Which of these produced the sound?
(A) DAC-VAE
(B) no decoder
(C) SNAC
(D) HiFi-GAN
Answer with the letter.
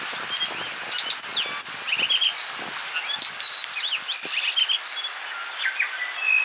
B